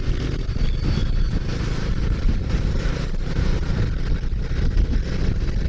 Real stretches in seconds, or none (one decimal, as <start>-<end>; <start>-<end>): 0.0-1.0; 3.3-5.7